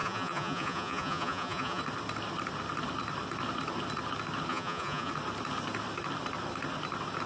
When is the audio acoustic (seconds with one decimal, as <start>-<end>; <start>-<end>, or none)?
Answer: 1.8-4.5; 5.1-7.3